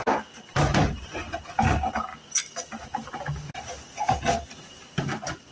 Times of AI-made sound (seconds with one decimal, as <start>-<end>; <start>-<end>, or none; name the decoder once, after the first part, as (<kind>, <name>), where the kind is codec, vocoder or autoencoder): none